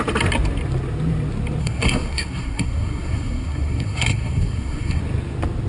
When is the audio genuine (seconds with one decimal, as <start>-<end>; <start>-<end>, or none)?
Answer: 0.0-1.6; 5.0-5.7